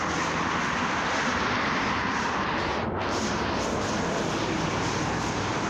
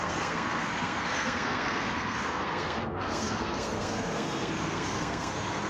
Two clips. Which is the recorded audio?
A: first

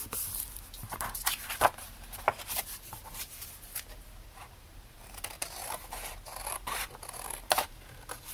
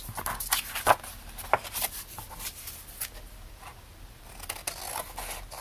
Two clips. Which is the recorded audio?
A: second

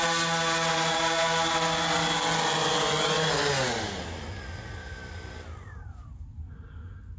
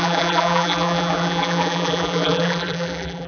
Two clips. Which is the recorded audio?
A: first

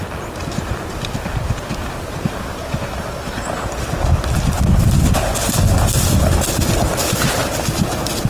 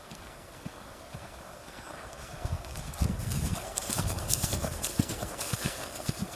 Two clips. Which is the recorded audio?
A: first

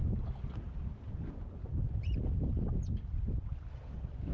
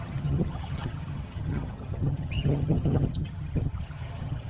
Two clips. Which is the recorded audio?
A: first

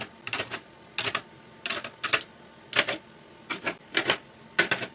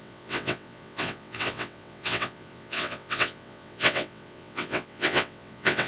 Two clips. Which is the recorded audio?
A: first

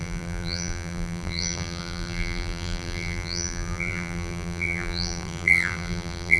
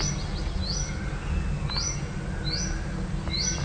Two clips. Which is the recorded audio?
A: second